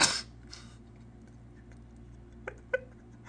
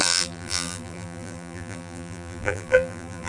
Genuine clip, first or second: first